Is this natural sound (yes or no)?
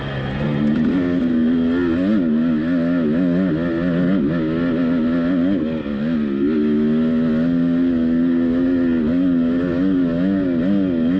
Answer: yes